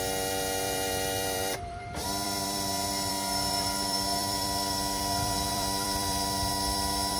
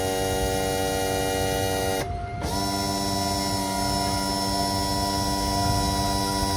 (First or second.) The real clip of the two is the second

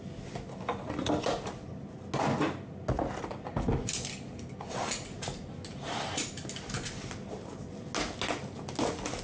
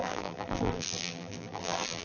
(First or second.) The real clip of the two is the first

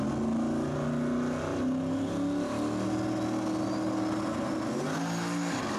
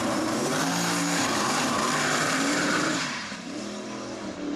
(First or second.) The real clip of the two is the first